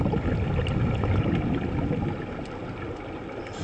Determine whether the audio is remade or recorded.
recorded